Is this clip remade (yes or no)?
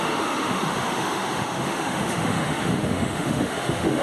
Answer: yes